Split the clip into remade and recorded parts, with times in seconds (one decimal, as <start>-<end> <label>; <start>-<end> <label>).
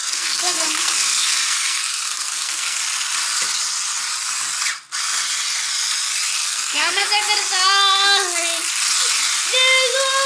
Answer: 0.0-2.8 remade; 2.8-6.4 recorded; 6.4-7.1 remade; 7.1-10.3 recorded